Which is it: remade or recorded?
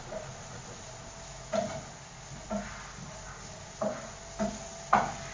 recorded